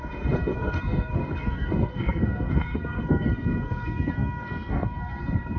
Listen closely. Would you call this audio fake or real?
fake